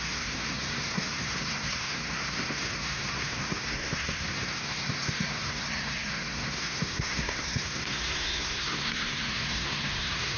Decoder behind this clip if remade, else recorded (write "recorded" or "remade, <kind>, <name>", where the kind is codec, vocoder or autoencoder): remade, codec, SNAC